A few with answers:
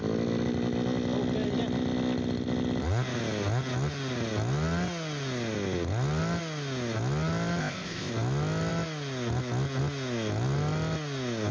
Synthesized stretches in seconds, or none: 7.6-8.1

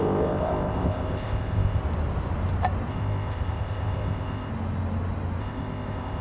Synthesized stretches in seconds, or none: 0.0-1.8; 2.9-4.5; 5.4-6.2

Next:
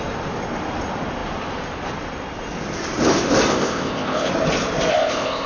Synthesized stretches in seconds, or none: 3.5-4.3; 4.9-5.5